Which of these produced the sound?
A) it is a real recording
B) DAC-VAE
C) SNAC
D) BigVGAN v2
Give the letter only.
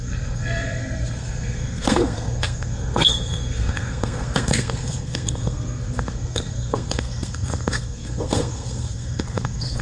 C